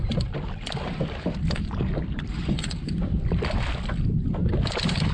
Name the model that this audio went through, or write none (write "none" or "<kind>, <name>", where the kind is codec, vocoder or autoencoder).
vocoder, BigVGAN v2